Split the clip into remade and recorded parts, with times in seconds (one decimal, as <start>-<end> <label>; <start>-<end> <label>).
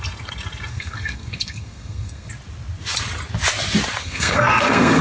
0.0-0.7 recorded; 0.7-2.3 remade; 2.3-4.0 recorded; 4.0-5.0 remade